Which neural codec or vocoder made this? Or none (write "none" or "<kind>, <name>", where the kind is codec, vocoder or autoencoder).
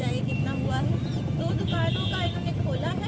none